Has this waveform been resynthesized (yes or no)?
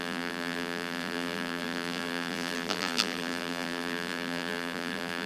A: yes